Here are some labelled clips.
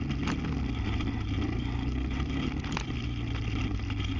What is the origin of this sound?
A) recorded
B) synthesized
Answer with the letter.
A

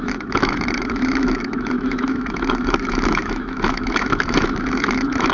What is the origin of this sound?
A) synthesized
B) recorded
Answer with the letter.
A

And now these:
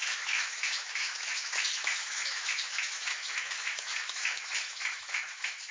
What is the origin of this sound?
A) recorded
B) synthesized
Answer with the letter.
B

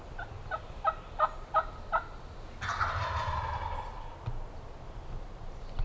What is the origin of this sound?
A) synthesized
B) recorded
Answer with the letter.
B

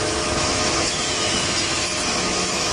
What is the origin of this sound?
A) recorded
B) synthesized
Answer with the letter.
B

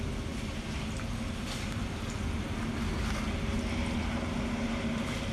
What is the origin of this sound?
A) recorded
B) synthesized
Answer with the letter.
A